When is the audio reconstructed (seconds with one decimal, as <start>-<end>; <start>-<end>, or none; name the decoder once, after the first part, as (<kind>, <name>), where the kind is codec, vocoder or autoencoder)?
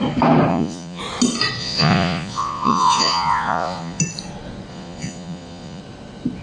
0.5-1.0 (vocoder, Vocos); 1.6-4.0; 4.7-5.8